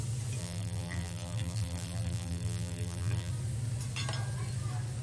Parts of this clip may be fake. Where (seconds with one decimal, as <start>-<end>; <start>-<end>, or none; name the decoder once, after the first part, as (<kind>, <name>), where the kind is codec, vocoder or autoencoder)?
0.4-3.3 (vocoder, BigVGAN v2)